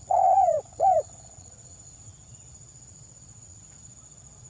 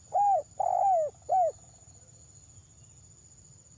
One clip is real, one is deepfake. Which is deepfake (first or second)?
first